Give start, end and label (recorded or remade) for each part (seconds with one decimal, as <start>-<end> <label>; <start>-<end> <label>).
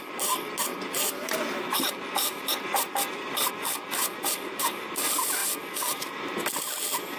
0.0-0.7 recorded; 0.7-3.5 remade; 3.5-4.0 recorded; 4.0-4.9 remade; 4.9-7.2 recorded